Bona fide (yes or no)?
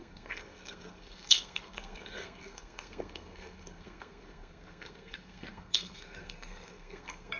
no